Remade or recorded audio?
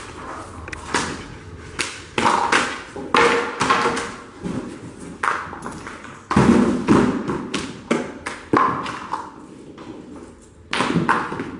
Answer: recorded